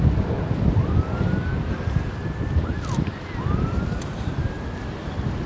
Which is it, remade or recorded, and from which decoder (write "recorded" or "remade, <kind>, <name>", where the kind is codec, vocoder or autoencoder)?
recorded